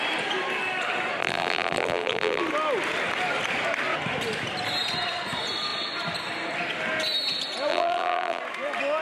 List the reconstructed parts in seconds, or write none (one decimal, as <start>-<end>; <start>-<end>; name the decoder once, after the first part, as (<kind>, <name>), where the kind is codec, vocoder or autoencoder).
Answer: 1.2-2.4 (vocoder, BigVGAN v2); 7.7-8.4